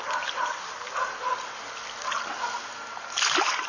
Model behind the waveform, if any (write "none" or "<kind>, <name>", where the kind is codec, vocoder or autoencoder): none